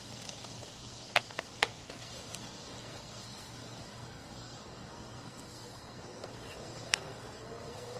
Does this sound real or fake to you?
fake